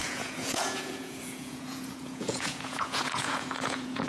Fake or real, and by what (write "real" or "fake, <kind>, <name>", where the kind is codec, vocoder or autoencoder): fake, vocoder, Vocos